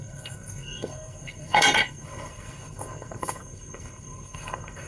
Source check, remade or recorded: remade